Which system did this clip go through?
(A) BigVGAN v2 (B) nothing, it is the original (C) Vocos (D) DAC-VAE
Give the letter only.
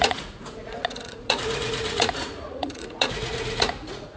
C